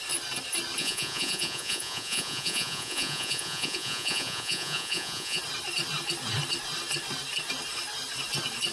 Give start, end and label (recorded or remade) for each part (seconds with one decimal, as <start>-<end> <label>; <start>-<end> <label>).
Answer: 0.0-0.8 recorded; 0.8-5.4 remade; 5.4-8.7 recorded